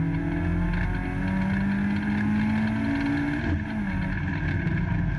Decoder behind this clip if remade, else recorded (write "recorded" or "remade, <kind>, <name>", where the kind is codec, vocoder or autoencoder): recorded